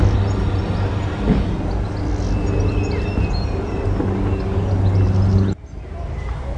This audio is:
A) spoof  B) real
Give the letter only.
B